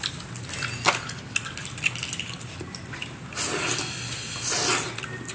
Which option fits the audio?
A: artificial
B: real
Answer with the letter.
B